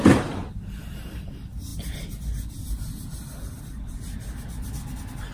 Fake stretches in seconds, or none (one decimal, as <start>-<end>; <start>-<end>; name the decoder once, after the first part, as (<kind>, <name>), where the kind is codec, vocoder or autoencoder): none